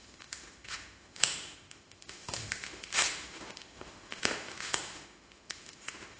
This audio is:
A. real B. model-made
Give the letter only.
B